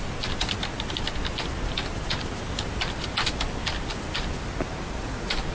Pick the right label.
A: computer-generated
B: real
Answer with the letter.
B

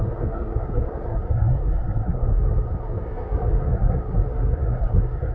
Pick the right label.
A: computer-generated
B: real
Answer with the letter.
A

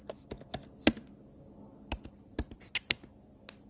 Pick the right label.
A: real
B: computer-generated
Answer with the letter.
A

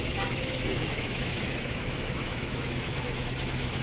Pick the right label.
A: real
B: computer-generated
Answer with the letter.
B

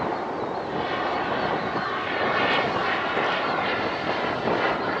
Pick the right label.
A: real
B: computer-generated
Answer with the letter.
A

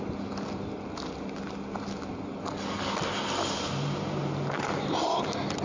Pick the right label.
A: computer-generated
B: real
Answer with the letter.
B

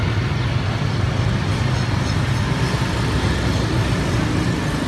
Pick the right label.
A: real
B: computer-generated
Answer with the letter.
A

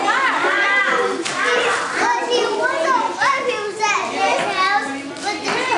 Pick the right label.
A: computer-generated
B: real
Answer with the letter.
B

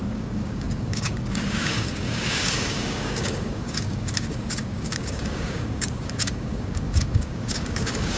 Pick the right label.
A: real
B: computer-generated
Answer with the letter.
B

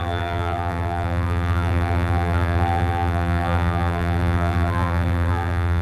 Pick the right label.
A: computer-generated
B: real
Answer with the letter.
A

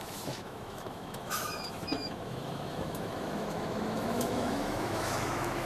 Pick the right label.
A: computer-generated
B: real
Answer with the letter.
A